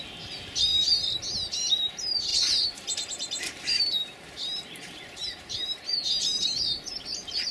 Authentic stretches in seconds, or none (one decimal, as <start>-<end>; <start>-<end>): 0.7-1.5